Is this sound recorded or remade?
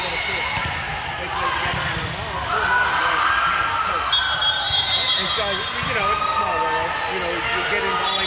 recorded